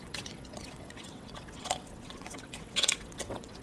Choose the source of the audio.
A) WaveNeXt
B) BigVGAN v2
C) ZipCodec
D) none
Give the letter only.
A